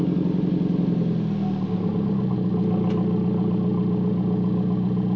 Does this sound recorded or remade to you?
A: recorded